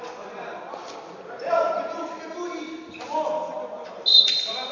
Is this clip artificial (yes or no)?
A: no